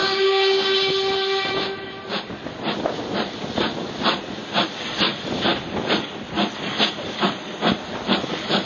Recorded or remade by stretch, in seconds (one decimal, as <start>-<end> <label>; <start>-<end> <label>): 0.0-0.9 remade; 0.9-8.7 recorded